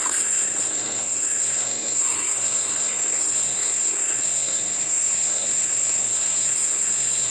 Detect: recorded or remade remade